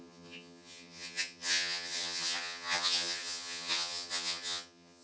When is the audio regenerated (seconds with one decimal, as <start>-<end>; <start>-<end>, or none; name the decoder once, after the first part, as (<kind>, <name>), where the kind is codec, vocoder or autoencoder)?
0.0-5.0 (vocoder, HiFi-GAN)